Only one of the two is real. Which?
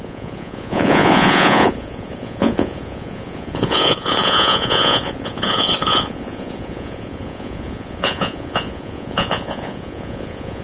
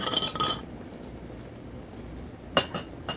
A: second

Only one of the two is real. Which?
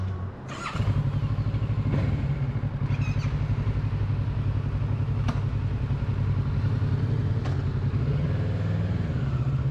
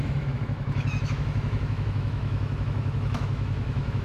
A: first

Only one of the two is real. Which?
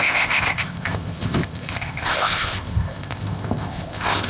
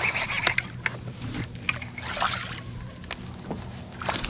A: second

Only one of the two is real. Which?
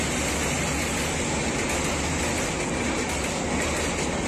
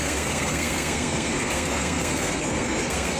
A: first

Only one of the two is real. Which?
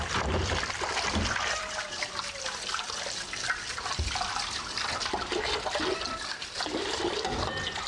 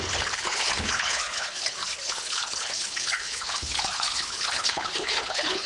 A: first